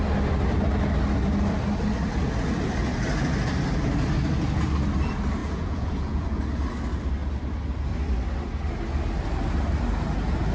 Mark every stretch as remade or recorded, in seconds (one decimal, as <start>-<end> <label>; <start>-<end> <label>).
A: 0.0-5.4 recorded; 5.4-6.4 remade; 6.4-10.5 recorded